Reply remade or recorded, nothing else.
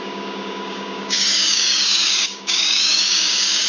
remade